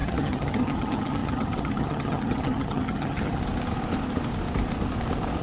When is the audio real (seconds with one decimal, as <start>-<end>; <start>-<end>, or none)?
3.4-5.4

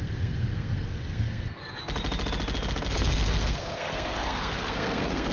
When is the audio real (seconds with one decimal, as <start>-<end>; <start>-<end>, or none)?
1.6-2.9

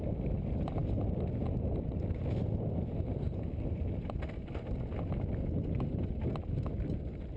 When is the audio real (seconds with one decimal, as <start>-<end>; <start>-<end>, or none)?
0.0-7.4

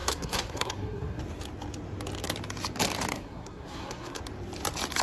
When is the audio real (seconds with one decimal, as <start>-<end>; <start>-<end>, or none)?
1.2-3.1; 4.2-5.0

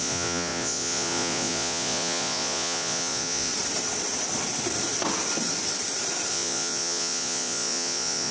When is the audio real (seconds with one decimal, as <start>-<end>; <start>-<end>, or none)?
3.5-6.3

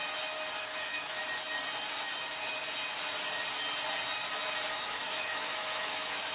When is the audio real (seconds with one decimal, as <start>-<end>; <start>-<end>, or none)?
0.0-0.6; 1.2-4.7